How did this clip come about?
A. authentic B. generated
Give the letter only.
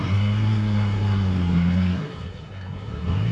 B